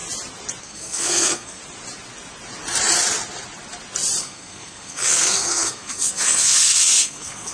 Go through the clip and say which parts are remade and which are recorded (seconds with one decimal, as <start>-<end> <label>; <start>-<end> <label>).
0.0-0.6 recorded; 0.6-1.6 remade; 1.6-4.2 recorded; 4.2-7.5 remade